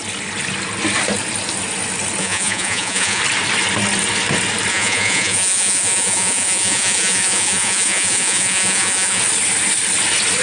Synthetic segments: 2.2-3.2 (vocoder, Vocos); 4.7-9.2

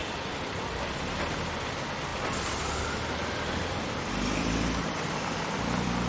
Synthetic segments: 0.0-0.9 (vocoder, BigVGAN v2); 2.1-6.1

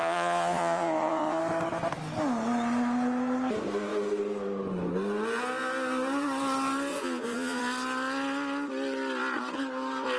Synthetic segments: 0.0-1.4 (vocoder, Vocos); 6.9-7.6

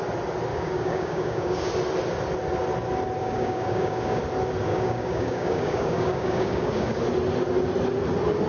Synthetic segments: 0.5-1.7 (codec, DAC); 3.2-4.2; 4.7-7.0

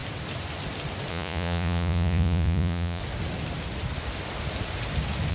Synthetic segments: 1.1-3.0 (vocoder, Vocos)

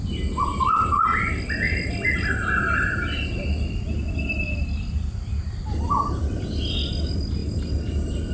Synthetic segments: none

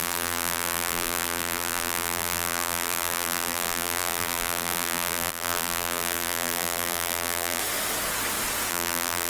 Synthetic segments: 0.0-7.6 (vocoder, BigVGAN v2); 8.7-9.3